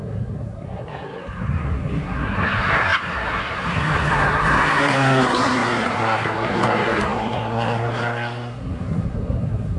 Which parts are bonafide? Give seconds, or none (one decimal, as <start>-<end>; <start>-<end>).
none